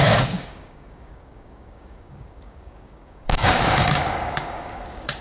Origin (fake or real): fake